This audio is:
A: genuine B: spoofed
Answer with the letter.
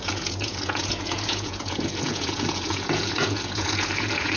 B